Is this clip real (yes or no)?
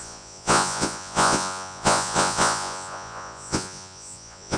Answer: no